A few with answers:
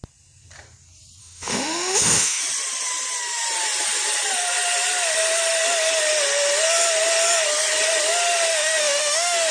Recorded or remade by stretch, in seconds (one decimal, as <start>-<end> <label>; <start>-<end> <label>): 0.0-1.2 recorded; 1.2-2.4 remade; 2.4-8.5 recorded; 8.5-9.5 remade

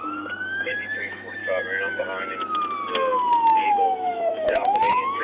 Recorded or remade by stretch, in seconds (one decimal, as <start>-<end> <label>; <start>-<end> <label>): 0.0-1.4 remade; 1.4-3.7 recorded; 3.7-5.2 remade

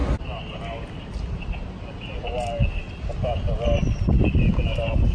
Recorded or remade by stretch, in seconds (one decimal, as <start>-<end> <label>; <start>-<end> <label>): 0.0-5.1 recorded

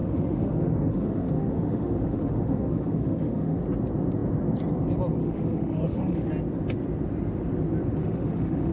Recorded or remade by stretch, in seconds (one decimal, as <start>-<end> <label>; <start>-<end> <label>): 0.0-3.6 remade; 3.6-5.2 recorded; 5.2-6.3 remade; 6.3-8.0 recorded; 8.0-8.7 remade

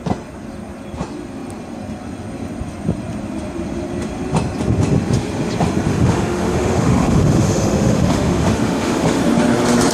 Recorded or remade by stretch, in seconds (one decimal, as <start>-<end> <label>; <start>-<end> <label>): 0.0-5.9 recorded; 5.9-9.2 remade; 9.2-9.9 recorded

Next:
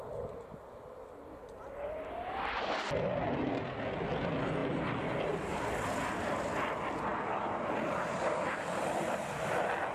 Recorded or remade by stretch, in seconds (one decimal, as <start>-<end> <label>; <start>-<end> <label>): 0.0-9.9 recorded

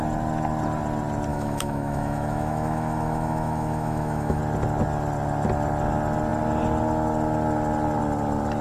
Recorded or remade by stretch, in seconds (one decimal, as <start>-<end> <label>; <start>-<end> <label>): 0.0-1.3 recorded; 1.3-4.4 remade; 4.4-8.6 recorded

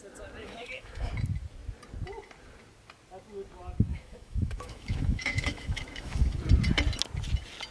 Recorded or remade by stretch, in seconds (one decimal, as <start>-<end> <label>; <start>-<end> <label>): 0.0-0.4 recorded; 0.4-1.1 remade; 1.1-3.9 recorded; 3.9-6.4 remade; 6.4-7.7 recorded